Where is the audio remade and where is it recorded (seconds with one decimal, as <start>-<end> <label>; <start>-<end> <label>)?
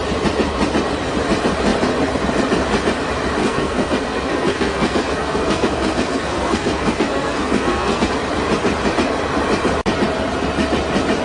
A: 0.0-3.4 recorded; 3.4-8.1 remade; 8.1-11.2 recorded